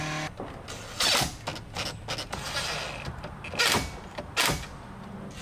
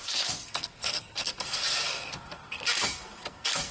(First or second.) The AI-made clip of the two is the second